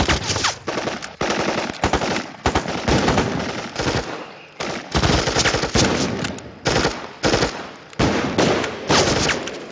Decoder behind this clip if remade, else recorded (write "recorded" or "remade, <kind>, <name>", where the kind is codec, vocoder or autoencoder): recorded